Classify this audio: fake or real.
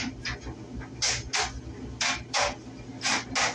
real